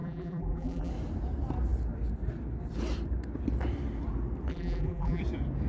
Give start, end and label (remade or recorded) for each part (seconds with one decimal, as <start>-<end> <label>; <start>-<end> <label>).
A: 0.0-0.9 remade; 0.9-4.5 recorded; 4.5-5.2 remade; 5.2-5.7 recorded

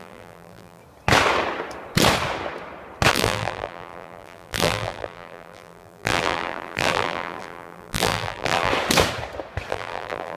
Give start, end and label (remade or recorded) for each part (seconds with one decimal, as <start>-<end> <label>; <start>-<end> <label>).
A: 0.0-0.8 remade; 0.8-3.1 recorded; 3.1-8.7 remade; 8.7-9.7 recorded; 9.7-10.4 remade

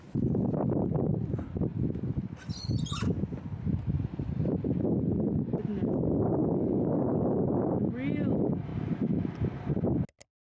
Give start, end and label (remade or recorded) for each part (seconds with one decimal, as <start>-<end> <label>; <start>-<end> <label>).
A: 0.0-10.4 recorded

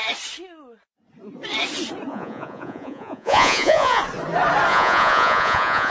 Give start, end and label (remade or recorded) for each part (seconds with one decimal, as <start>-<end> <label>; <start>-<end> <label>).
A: 0.0-2.1 recorded; 2.1-4.0 remade; 4.0-4.7 recorded; 4.7-5.9 remade

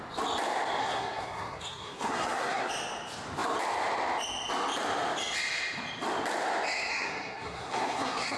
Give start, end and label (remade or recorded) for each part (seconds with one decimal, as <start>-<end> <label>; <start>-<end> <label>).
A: 0.0-0.8 recorded; 0.8-2.7 remade; 2.7-6.9 recorded; 6.9-8.4 remade

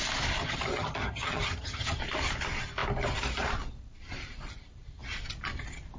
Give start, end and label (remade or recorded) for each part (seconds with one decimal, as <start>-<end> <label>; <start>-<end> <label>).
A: 0.0-0.4 recorded; 0.4-2.0 remade; 2.0-6.0 recorded

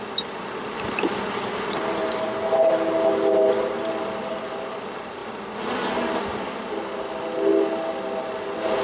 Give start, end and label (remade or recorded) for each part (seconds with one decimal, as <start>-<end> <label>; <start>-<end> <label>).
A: 0.0-8.8 recorded

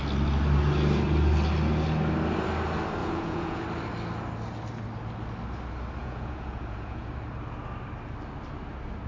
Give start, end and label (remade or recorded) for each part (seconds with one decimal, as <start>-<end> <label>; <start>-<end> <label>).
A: 0.0-3.0 recorded; 3.0-3.6 remade; 3.6-6.0 recorded; 6.0-7.1 remade; 7.1-9.1 recorded